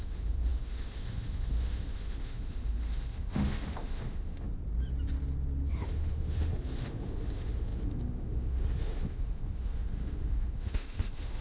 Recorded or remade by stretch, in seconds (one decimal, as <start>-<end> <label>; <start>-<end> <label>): 0.0-4.5 remade; 4.5-5.7 recorded; 5.7-11.4 remade